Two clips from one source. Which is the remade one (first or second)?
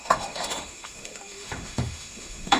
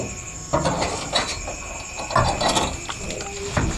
first